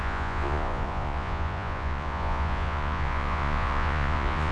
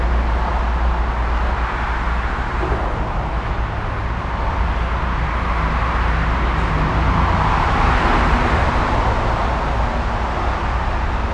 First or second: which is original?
second